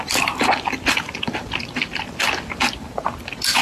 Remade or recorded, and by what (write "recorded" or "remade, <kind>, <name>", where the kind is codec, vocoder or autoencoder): recorded